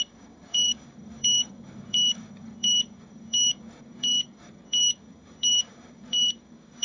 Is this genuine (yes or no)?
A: no